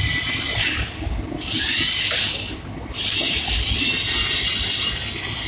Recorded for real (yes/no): yes